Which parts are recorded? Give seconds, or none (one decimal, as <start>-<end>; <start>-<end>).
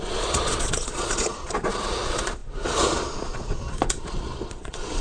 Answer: none